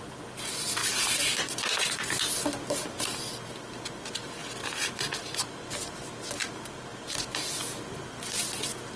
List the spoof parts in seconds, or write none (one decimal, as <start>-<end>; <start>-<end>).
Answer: 0.0-0.8; 5.5-6.9; 8.3-9.0